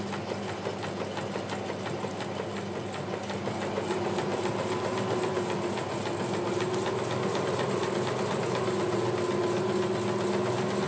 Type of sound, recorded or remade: recorded